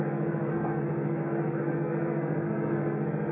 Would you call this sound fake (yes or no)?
yes